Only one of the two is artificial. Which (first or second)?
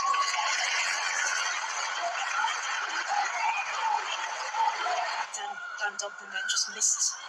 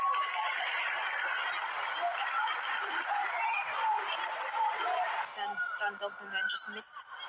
first